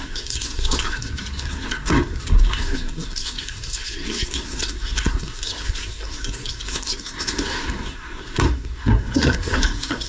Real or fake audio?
fake